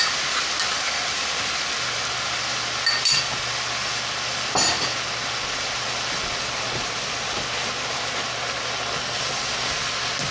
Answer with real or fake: real